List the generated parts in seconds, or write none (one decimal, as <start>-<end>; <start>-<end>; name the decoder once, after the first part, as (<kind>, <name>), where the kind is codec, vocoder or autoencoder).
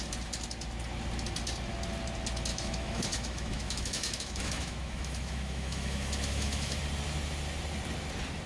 2.5-6.8 (autoencoder, DAC-VAE)